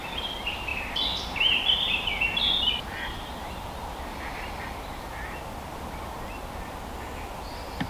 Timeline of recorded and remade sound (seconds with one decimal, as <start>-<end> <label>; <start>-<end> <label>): 0.0-0.7 recorded; 0.7-2.7 remade; 2.7-7.9 recorded